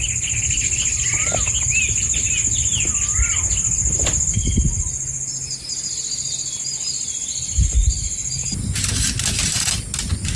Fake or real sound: real